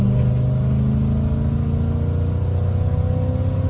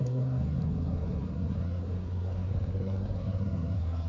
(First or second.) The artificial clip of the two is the second